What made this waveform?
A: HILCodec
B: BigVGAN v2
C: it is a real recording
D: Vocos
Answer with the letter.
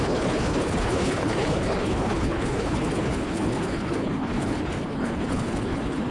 A